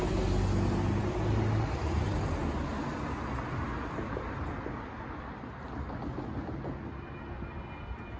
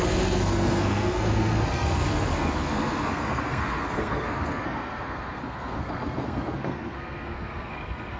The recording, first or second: first